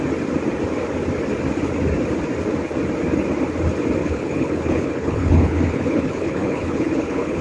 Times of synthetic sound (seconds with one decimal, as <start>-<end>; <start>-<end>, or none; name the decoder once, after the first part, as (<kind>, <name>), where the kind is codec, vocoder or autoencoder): 4.0-7.4 (codec, HILCodec)